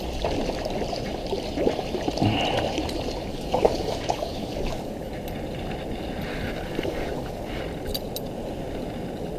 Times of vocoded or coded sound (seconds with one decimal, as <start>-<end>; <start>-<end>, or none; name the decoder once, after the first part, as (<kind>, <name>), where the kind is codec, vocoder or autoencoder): 3.3-5.1 (codec, DAC); 6.3-7.6